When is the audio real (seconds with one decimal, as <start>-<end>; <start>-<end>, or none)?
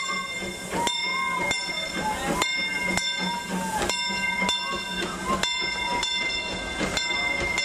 0.0-7.6